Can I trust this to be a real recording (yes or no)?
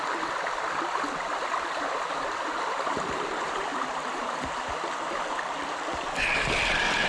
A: no